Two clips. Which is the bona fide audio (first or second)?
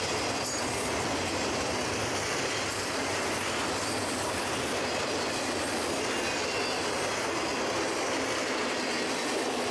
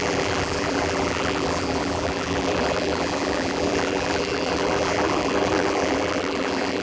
first